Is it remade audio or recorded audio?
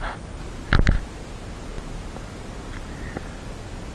recorded